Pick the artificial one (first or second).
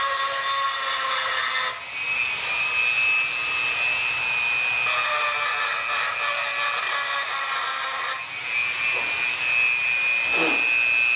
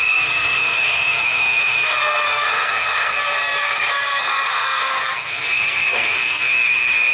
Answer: second